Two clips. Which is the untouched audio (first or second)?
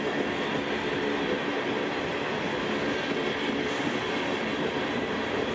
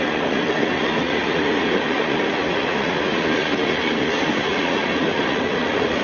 first